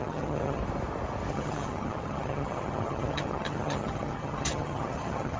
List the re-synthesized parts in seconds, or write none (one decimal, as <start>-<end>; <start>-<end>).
0.0-0.6; 1.3-5.4